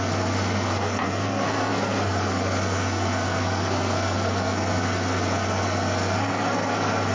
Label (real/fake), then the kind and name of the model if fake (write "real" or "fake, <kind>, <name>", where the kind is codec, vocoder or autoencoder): fake, codec, SNAC